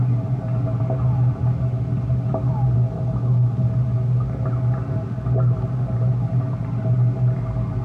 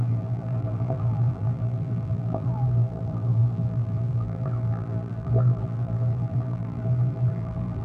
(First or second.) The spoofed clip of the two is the second